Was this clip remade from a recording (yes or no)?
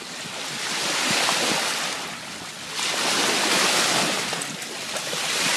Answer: no